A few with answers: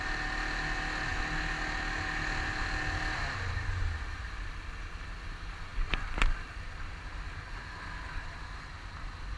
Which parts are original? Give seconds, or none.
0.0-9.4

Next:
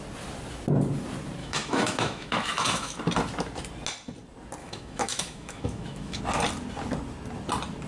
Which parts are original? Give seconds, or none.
0.0-1.4; 3.0-4.6; 6.2-7.9

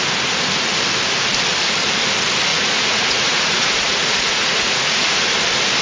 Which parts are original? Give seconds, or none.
0.0-2.5; 5.2-5.8

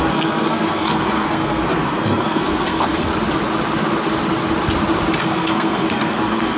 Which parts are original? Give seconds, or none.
3.1-5.2

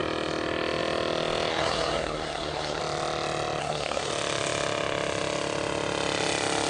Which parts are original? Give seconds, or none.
0.0-1.5; 2.8-3.6; 4.1-6.7

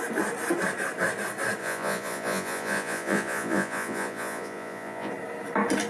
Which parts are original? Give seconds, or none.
0.0-1.6; 5.1-5.9

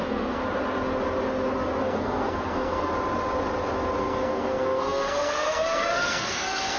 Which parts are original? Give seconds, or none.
0.4-1.8; 2.9-4.0